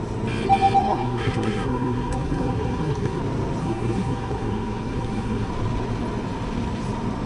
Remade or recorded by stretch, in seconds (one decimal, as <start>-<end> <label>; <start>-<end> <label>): 0.0-0.8 recorded; 0.8-3.2 remade; 3.2-3.6 recorded; 3.6-5.5 remade; 5.5-7.3 recorded